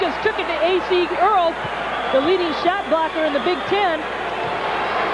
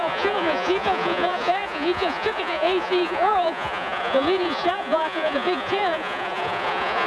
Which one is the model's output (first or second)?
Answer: second